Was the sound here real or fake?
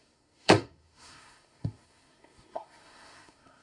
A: fake